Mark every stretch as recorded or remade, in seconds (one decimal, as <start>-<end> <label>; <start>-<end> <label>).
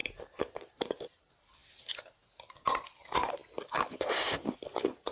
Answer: 0.0-1.0 remade; 1.0-5.1 recorded